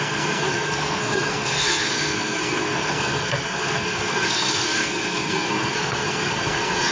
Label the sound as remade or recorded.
remade